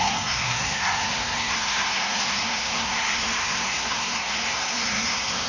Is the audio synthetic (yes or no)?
yes